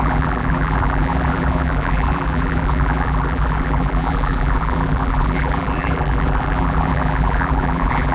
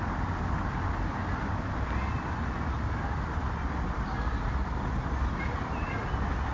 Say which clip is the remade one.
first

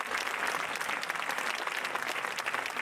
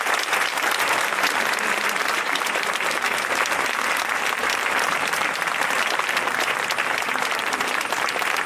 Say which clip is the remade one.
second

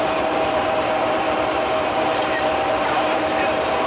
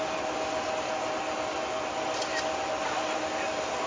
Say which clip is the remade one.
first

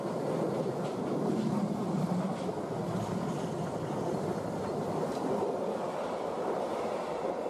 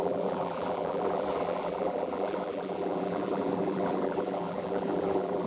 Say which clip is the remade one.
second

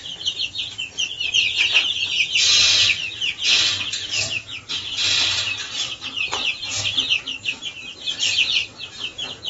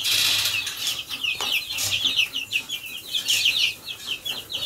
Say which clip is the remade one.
second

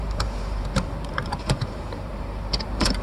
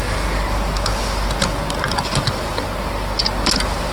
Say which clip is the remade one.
first